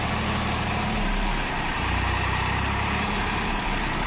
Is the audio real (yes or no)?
no